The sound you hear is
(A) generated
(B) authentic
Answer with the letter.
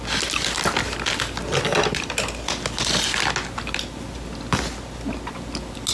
B